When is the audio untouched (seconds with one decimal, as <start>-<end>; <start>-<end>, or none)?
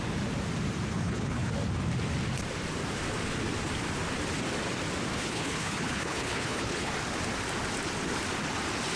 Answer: 0.0-0.9; 1.5-5.1; 6.9-9.0